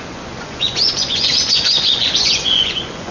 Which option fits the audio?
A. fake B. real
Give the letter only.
A